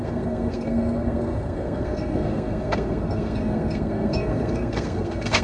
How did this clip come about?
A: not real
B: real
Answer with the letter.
A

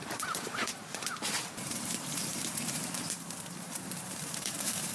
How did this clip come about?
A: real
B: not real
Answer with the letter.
B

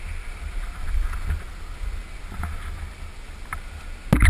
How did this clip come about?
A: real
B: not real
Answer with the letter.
A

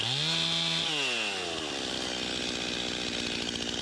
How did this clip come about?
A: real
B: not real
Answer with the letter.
A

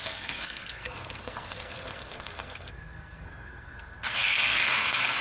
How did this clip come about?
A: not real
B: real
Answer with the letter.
A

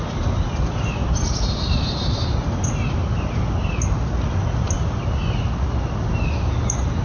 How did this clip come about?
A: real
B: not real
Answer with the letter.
A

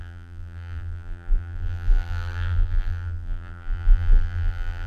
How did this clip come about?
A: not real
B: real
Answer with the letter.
A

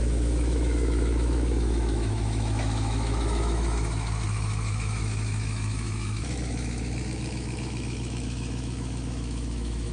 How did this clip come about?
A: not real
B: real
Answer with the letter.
A